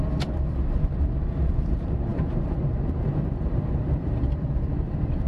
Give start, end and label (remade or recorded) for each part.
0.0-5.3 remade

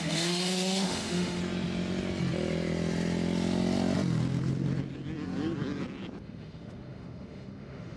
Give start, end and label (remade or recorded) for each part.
0.0-1.4 remade; 1.4-6.2 recorded; 6.2-8.0 remade

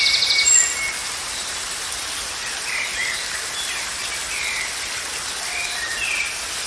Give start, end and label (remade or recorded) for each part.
0.0-1.0 recorded; 1.0-1.9 remade; 1.9-2.9 recorded; 2.9-4.7 remade; 4.7-6.7 recorded

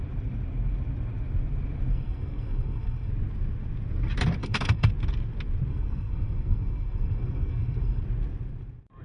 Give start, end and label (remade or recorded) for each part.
0.0-1.9 recorded; 1.9-3.1 remade; 3.1-4.4 recorded; 4.4-4.9 remade; 4.9-5.7 recorded; 5.7-8.0 remade; 8.0-9.0 recorded

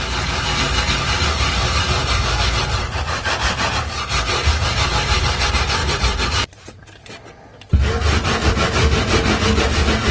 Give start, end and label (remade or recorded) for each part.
0.0-2.6 recorded; 2.6-4.5 remade; 4.5-5.8 recorded; 5.8-8.5 remade; 8.5-10.1 recorded

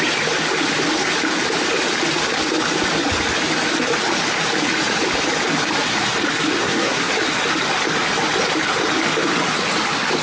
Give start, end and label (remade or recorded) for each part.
0.0-6.6 recorded; 6.6-7.1 remade; 7.1-10.2 recorded